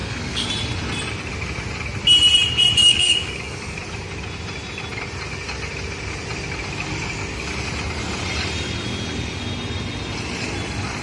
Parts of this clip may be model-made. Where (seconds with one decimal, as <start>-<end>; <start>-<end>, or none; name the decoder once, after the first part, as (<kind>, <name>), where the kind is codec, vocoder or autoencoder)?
0.0-0.5 (codec, DAC); 2.8-3.8